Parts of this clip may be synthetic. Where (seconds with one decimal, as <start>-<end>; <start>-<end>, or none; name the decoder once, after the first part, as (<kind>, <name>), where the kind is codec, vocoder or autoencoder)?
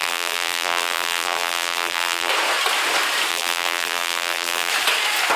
0.0-2.3 (vocoder, BigVGAN v2); 3.3-4.7